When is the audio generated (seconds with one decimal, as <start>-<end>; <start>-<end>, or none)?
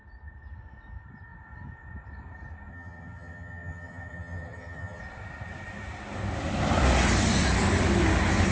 2.7-5.0